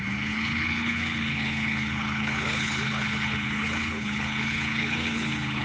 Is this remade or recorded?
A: remade